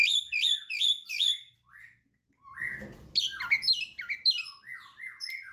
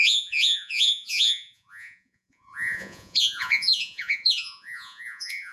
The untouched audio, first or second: first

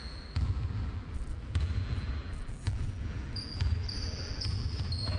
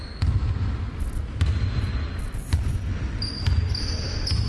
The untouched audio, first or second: second